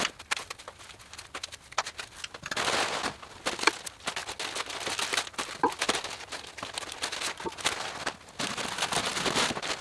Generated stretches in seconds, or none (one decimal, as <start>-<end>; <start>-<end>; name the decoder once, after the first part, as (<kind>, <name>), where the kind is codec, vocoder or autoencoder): none